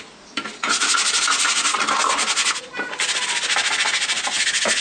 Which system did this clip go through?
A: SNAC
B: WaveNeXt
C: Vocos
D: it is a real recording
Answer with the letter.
D